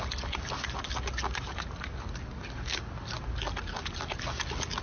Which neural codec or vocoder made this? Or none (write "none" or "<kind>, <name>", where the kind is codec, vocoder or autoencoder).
none